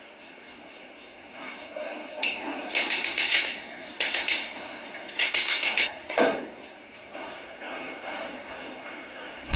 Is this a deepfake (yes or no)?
yes